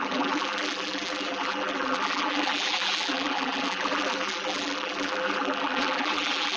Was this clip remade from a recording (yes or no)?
yes